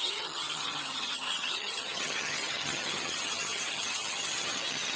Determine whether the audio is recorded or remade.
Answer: remade